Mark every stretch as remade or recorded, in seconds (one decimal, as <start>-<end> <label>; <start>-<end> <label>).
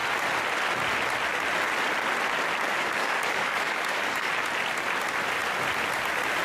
0.0-2.7 recorded; 2.7-4.3 remade; 4.3-6.4 recorded